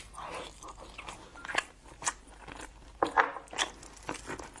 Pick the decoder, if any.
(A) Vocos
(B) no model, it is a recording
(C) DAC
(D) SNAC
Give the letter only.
B